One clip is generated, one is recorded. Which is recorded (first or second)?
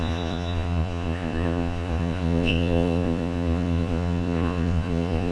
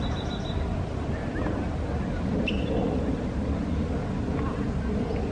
second